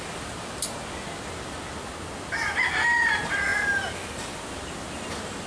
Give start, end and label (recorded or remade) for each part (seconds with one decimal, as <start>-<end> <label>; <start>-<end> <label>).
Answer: 0.0-5.5 recorded